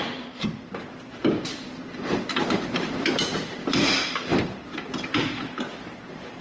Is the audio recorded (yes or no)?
no